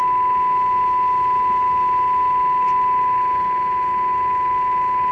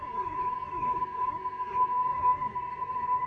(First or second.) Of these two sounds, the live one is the first